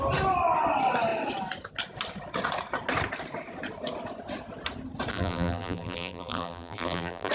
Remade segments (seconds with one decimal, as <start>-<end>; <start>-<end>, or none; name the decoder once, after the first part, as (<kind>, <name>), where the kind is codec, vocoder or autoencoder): 5.1-7.3 (vocoder, BigVGAN v2)